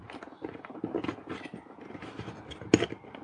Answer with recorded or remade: recorded